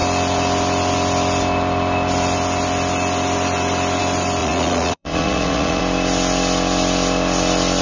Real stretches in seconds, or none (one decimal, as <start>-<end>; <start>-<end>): 0.0-4.4; 5.8-7.8